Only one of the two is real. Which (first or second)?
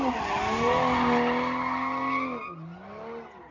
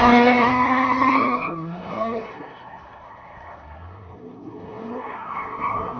first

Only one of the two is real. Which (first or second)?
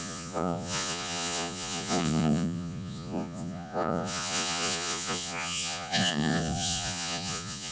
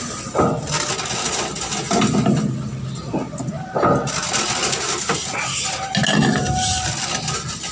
second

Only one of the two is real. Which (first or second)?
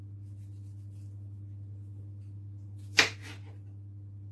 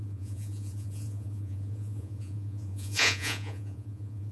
first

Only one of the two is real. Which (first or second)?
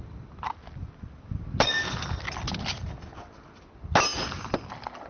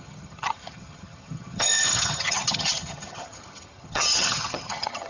first